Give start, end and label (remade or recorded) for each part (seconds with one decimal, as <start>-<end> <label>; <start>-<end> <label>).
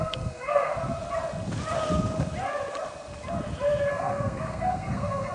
0.0-0.7 remade; 0.7-3.9 recorded; 3.9-5.3 remade